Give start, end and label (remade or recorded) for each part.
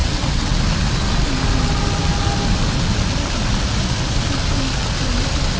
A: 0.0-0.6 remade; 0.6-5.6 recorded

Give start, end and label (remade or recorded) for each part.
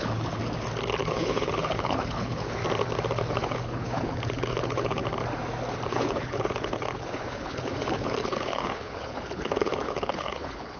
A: 0.0-0.4 remade; 0.4-1.0 recorded; 1.0-2.6 remade; 2.6-3.3 recorded; 3.3-5.0 remade; 5.0-5.9 recorded; 5.9-10.8 remade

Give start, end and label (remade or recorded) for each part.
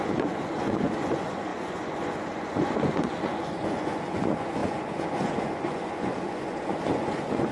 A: 0.0-7.5 remade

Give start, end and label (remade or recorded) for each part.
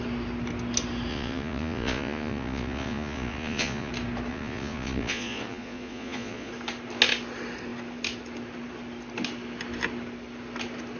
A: 0.0-1.1 recorded; 1.1-3.9 remade; 3.9-4.3 recorded; 4.3-6.5 remade; 6.5-11.0 recorded